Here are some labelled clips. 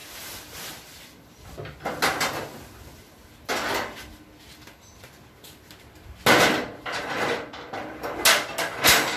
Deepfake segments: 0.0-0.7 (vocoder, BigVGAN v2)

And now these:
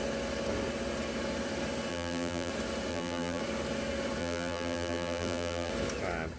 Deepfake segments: 1.9-2.5 (vocoder, BigVGAN v2); 2.9-3.4; 4.2-5.7

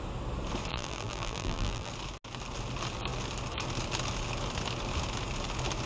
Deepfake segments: 0.7-1.9 (vocoder, BigVGAN v2)

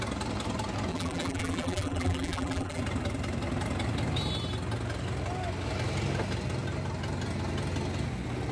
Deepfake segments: 0.9-2.8 (vocoder, BigVGAN v2)

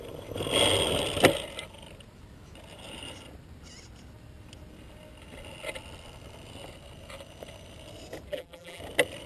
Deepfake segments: 8.3-8.8 (vocoder, BigVGAN v2)

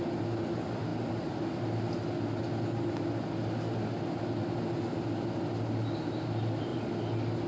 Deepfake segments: none

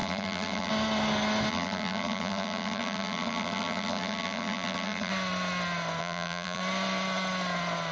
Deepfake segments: 0.0-0.7 (vocoder, BigVGAN v2); 1.5-5.1; 6.0-6.6